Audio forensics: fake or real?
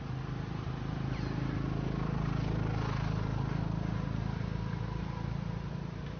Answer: real